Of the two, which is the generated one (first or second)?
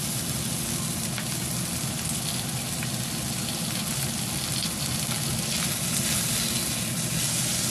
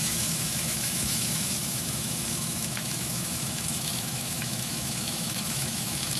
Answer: second